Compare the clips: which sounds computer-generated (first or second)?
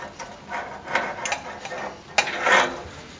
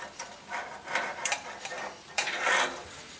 second